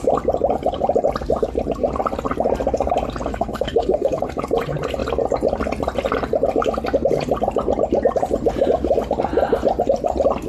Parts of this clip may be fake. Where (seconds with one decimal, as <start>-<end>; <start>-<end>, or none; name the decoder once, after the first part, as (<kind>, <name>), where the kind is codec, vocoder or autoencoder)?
3.3-4.2 (codec, SNAC)